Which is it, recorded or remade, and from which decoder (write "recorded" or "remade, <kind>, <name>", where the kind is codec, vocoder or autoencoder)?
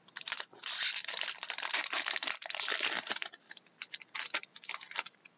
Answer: remade, vocoder, BigVGAN v2